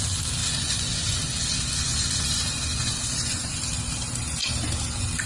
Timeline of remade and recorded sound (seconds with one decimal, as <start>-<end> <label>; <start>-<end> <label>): 0.0-0.4 recorded; 0.4-3.6 remade; 3.6-5.3 recorded